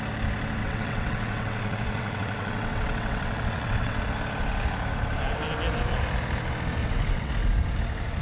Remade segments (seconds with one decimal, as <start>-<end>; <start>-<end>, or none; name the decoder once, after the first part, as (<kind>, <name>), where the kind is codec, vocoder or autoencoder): 0.6-4.0 (vocoder, WaveNeXt); 6.8-7.3

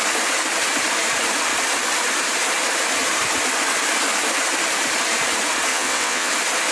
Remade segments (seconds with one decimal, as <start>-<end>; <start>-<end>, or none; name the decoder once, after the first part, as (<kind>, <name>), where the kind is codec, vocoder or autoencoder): 5.7-6.3 (vocoder, WaveNeXt)

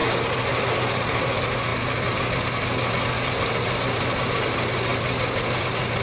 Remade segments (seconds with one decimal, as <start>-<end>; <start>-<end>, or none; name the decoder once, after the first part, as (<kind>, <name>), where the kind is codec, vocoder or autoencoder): none

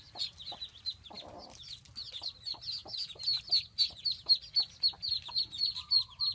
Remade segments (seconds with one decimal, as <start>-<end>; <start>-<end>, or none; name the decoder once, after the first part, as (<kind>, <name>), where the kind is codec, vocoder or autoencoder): none

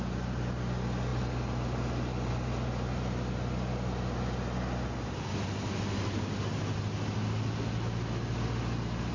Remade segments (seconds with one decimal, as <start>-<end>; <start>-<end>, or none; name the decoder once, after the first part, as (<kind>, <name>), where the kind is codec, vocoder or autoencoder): none

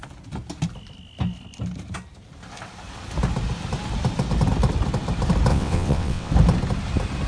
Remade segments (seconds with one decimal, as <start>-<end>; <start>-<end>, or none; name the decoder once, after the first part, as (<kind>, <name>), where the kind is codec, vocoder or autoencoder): 5.5-6.3 (vocoder, WaveNeXt)